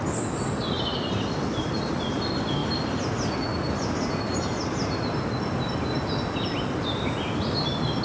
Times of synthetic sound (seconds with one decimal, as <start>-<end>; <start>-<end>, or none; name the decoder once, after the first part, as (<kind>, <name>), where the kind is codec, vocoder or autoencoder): none